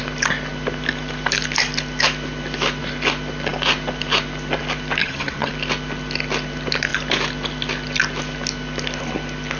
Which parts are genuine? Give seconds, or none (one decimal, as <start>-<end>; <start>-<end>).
0.0-5.0; 5.5-9.6